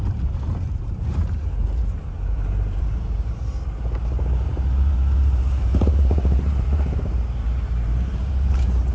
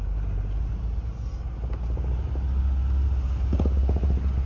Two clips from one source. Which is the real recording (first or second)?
second